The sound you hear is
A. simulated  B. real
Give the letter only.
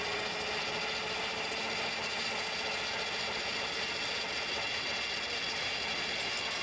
B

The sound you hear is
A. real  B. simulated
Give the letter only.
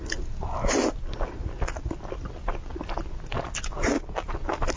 A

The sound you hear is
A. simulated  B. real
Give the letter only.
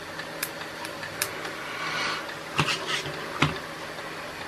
B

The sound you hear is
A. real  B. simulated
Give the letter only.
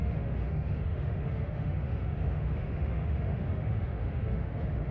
B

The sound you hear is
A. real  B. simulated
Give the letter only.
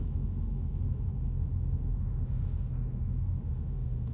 B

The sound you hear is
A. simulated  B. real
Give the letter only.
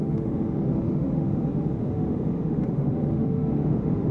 A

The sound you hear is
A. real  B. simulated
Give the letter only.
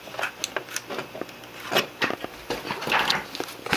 A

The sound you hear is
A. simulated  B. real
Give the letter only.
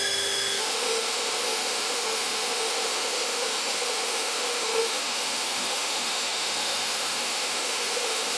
A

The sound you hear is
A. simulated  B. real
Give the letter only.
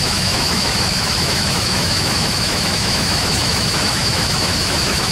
A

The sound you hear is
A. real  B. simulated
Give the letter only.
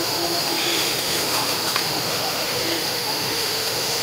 B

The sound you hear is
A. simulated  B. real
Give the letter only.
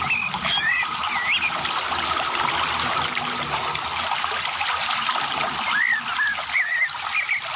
B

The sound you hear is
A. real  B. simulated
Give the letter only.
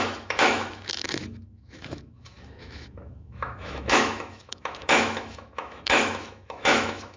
B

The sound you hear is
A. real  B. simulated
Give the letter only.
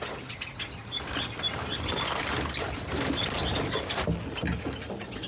A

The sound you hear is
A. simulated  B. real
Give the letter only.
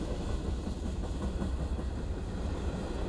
B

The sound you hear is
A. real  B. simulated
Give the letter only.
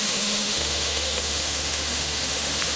B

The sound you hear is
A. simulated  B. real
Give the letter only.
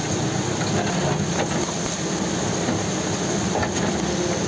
B